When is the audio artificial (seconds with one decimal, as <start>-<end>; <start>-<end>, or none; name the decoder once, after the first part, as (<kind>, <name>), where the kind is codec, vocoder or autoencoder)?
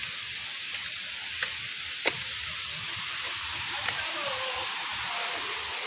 3.4-5.9 (vocoder, BigVGAN v2)